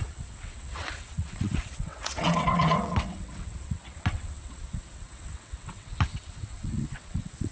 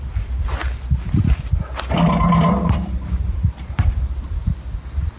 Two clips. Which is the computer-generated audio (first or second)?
first